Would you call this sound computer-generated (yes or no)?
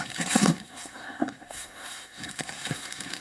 yes